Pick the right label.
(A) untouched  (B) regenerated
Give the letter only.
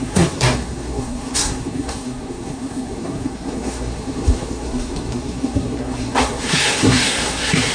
B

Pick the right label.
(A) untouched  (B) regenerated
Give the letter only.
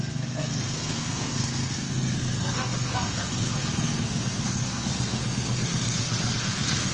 B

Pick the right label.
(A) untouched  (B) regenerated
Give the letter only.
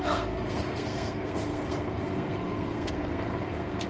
B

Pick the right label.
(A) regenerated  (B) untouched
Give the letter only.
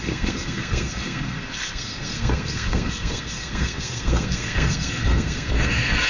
A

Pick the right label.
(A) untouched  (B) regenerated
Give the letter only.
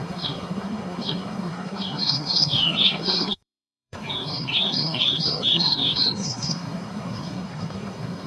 B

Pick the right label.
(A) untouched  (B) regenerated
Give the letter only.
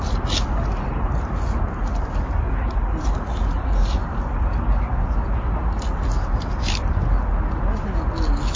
A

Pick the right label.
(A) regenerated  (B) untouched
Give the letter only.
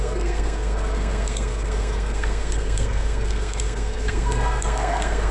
A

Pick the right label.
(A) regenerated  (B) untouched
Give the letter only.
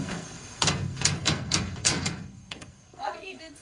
A